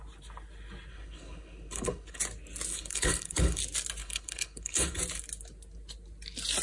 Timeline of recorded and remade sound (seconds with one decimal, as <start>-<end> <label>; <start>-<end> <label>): 0.0-0.9 recorded; 0.9-2.2 remade; 2.2-2.7 recorded; 2.7-3.6 remade; 3.6-4.0 recorded; 4.0-5.0 remade; 5.0-6.6 recorded